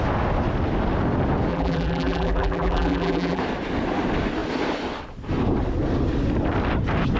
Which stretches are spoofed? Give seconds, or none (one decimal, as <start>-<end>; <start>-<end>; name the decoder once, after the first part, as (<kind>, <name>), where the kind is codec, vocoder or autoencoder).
1.5-3.4 (vocoder, BigVGAN v2)